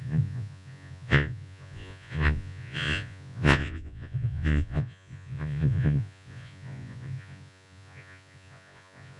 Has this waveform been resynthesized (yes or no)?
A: yes